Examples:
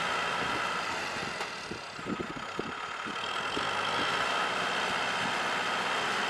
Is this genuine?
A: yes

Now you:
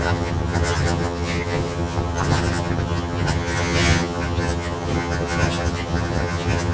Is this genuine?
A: no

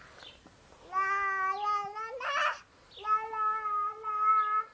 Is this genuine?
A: yes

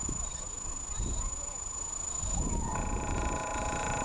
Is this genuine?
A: no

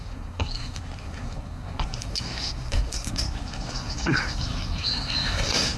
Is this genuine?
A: no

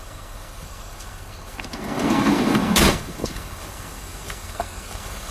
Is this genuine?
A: no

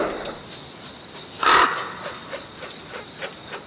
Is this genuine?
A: yes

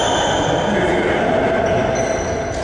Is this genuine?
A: yes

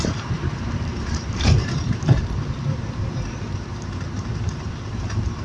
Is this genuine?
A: no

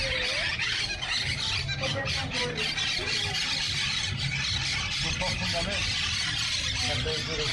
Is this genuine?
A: yes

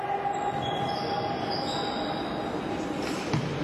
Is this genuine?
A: yes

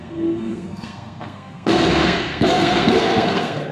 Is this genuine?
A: no